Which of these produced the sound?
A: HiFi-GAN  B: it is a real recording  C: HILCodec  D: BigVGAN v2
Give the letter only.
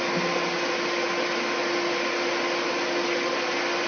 B